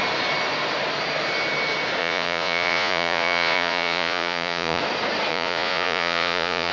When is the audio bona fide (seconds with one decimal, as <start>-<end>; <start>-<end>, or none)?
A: 0.0-2.0; 4.8-5.3